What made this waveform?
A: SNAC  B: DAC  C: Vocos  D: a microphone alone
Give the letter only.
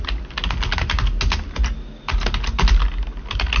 D